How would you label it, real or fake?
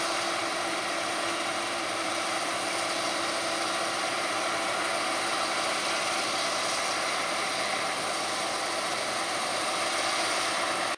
fake